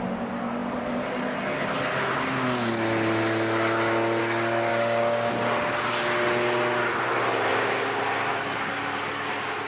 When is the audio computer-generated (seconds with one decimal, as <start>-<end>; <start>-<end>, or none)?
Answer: 4.7-5.3; 7.5-8.0